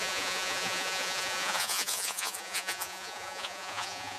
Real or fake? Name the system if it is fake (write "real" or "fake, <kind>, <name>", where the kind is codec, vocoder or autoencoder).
fake, vocoder, Vocos